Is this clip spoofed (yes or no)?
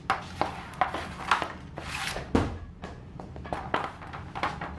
no